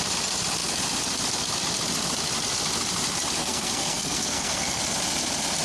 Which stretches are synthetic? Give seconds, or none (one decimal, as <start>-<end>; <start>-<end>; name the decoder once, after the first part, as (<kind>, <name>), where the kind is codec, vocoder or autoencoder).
3.4-4.8 (codec, SNAC)